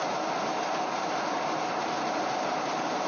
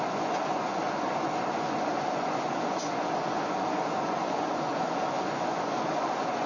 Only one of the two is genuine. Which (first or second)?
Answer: first